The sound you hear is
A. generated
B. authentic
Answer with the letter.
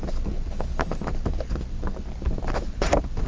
B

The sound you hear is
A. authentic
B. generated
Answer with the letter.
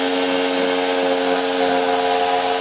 A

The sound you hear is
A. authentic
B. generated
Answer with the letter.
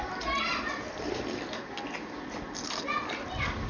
A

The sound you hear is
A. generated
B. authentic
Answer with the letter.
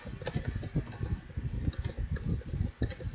B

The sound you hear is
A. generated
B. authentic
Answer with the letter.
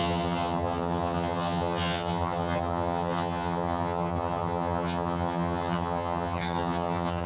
A